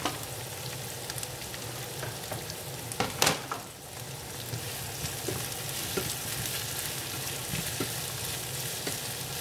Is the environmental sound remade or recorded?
recorded